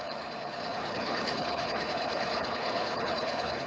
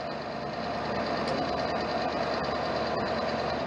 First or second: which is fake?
first